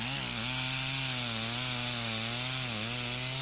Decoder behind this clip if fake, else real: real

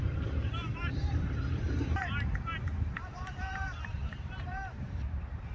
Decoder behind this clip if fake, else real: fake, vocoder, BigVGAN v2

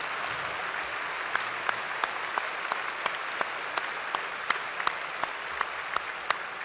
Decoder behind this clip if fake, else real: real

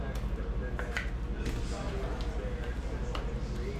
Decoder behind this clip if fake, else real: real